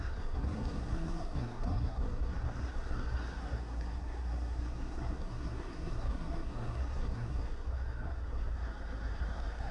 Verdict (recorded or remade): remade